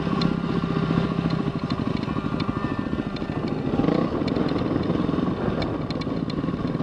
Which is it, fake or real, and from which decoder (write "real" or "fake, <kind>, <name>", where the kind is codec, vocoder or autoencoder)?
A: real